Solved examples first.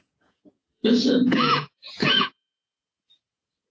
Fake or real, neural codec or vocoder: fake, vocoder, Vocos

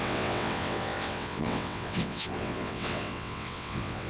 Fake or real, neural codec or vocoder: fake, vocoder, WaveNeXt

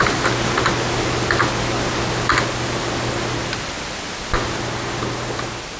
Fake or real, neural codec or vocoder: real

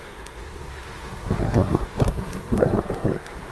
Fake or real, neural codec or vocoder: fake, codec, SNAC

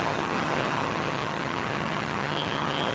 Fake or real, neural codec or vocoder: fake, vocoder, HiFi-GAN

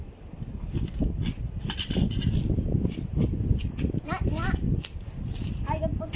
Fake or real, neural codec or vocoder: real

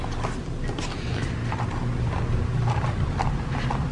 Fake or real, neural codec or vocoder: real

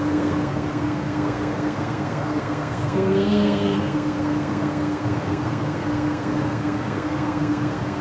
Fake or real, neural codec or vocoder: fake, codec, SNAC